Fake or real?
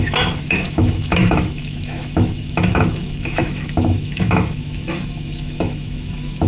fake